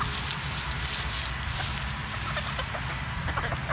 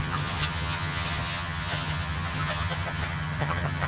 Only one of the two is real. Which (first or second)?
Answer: first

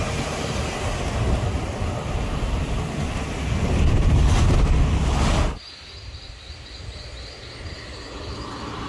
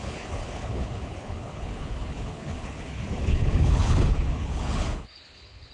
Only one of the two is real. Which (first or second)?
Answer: first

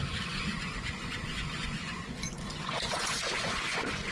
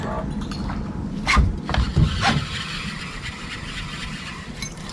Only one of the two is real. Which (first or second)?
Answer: second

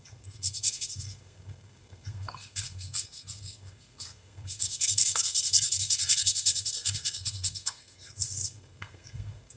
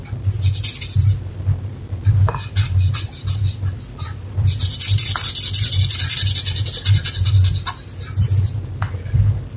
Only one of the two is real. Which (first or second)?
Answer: second